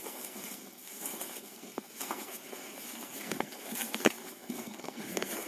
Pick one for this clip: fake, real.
fake